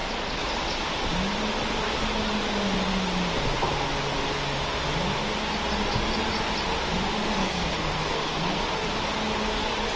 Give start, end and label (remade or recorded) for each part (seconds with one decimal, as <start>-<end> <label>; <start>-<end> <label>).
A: 0.0-7.4 recorded; 7.4-8.6 remade; 8.6-10.0 recorded